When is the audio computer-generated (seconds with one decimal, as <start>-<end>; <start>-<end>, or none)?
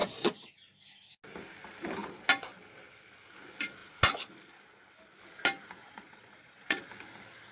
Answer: 0.0-0.5; 5.8-6.9